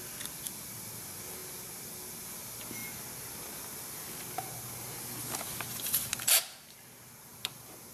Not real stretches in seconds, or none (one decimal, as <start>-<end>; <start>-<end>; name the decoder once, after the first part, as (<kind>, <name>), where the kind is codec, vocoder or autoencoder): none